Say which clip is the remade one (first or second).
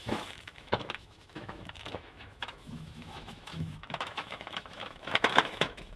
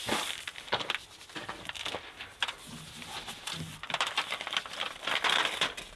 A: first